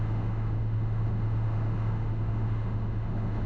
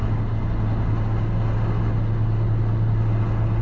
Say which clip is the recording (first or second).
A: second